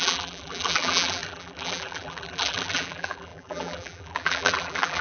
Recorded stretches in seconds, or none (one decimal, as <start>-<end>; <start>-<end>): none